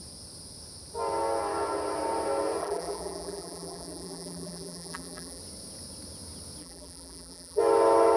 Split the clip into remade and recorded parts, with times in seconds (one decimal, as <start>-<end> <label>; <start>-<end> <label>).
0.0-2.6 recorded; 2.6-5.4 remade; 5.4-6.6 recorded; 6.6-7.6 remade; 7.6-8.2 recorded